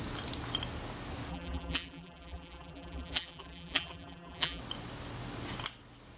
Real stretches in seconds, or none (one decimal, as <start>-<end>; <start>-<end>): 0.0-1.3; 4.6-6.2